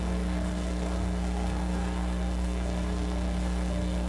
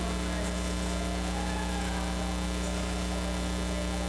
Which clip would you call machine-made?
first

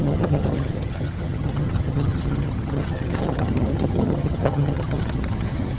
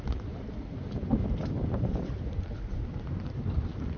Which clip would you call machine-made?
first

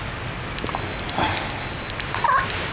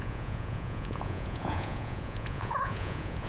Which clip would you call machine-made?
second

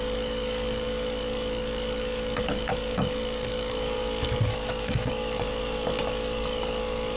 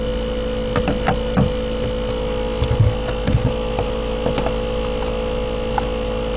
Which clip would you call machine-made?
first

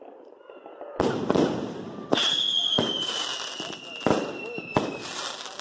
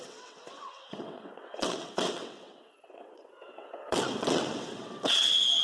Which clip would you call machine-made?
second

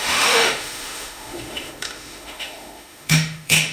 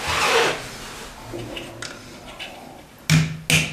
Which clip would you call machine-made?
first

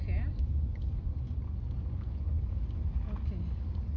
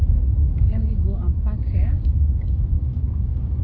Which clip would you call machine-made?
second